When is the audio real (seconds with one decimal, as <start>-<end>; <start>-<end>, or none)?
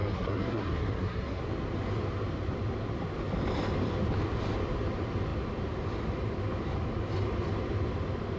1.4-8.4